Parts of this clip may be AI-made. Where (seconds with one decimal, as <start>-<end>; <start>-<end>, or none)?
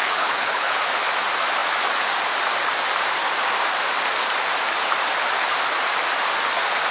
0.0-0.9